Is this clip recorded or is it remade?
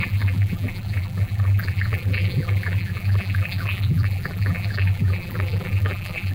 remade